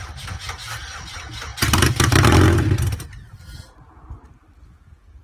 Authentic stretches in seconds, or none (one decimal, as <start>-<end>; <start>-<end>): 0.6-1.1; 1.5-4.6